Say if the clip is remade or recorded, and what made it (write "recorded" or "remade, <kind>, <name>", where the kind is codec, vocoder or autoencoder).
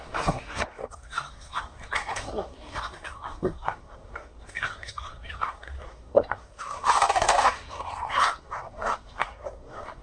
remade, codec, SNAC